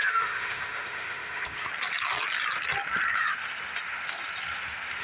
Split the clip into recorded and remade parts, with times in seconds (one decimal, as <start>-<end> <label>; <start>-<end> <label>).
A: 0.0-1.7 remade; 1.7-5.0 recorded